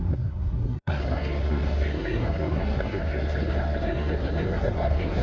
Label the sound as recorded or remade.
remade